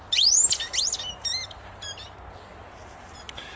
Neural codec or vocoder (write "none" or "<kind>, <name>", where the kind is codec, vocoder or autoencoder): none